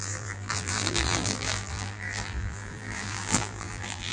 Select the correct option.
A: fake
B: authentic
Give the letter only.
A